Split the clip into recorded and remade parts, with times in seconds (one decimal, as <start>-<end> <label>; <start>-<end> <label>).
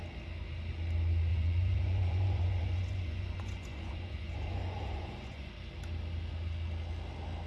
0.0-1.3 recorded; 1.3-5.5 remade; 5.5-7.5 recorded